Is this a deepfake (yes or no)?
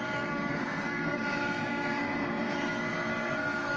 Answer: yes